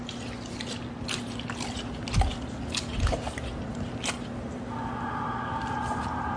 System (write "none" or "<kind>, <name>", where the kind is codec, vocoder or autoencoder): none